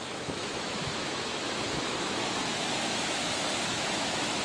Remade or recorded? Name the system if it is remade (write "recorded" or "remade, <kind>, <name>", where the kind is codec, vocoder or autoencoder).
remade, autoencoder, DAC-VAE